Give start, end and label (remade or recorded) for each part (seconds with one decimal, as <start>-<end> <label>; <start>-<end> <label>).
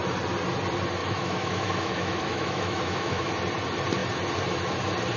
0.0-1.0 recorded; 1.0-3.3 remade; 3.3-5.2 recorded